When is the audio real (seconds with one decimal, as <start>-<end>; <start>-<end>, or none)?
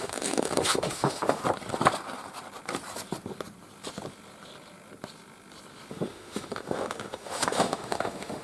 1.4-5.9